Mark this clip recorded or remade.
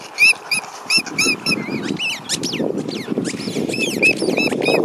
recorded